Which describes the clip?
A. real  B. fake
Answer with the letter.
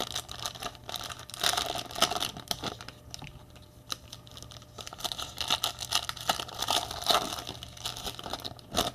A